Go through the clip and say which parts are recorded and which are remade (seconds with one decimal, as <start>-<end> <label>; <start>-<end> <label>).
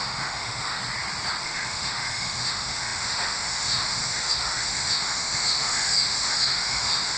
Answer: 0.0-0.8 remade; 0.8-1.4 recorded; 1.4-7.2 remade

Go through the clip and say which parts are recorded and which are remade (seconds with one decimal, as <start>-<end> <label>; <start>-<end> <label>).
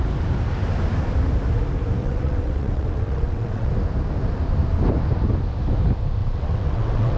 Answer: 0.0-2.0 recorded; 2.0-3.7 remade; 3.7-6.2 recorded; 6.2-7.2 remade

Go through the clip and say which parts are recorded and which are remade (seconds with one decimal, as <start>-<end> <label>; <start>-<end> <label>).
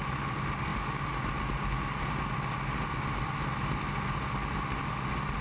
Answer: 0.0-5.4 recorded